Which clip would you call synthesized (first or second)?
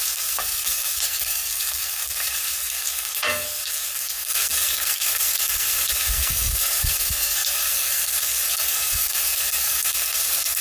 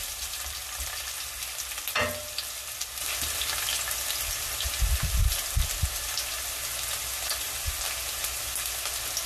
first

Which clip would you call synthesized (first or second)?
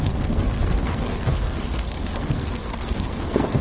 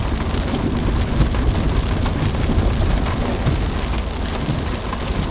first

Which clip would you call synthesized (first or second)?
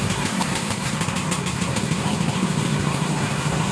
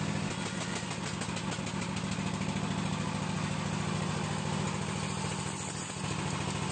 first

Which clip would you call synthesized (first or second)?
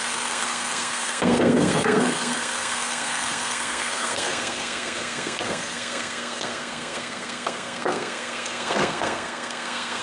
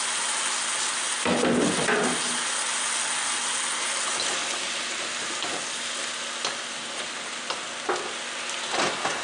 first